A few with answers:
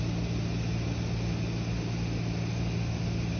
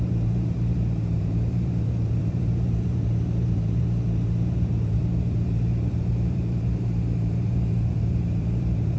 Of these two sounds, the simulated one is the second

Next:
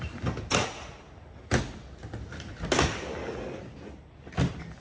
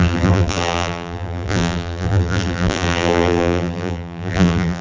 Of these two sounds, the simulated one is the second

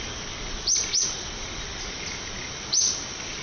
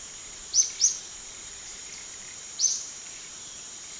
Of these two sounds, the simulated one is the second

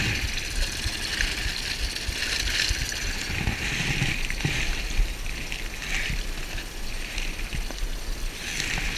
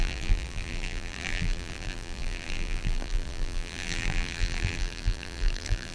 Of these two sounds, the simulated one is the second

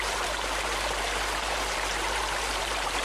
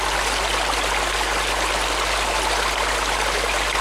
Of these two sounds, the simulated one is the first